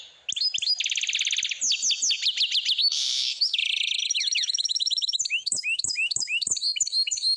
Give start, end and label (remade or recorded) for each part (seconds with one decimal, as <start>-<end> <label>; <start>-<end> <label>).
0.0-2.8 recorded; 2.8-7.4 remade